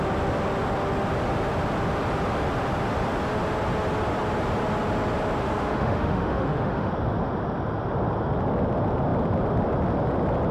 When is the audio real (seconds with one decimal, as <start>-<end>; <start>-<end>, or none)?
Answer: 0.0-5.4; 6.9-10.5